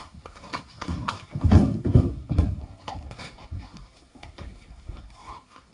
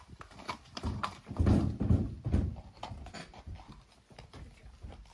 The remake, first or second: first